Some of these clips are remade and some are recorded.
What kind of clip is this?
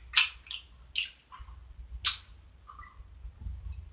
recorded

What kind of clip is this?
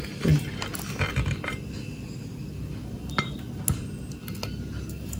recorded